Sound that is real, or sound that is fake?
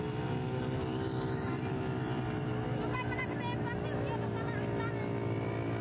real